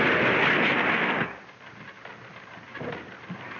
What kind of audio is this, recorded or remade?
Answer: recorded